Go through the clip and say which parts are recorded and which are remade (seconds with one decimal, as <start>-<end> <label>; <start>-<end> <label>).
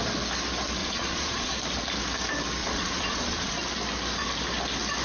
0.0-0.8 recorded; 0.8-1.5 remade; 1.5-2.6 recorded; 2.6-3.5 remade; 3.5-5.0 recorded